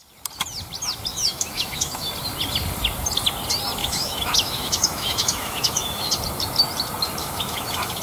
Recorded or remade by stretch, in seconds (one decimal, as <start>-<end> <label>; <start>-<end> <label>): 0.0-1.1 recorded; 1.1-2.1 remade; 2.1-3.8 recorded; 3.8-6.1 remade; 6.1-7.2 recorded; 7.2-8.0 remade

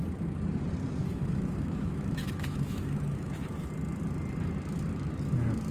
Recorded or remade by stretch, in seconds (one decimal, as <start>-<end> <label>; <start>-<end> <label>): 0.0-1.0 recorded; 1.0-3.7 remade; 3.7-5.7 recorded

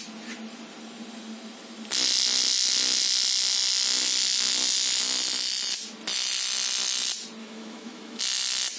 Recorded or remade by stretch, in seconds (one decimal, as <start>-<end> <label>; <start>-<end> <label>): 0.0-7.4 recorded; 7.4-8.2 remade; 8.2-8.8 recorded

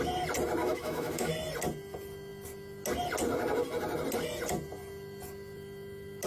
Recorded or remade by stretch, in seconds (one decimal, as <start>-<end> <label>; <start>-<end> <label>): 0.0-0.6 recorded; 0.6-1.3 remade; 1.3-6.3 recorded